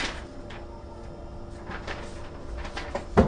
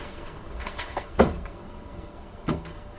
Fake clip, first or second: second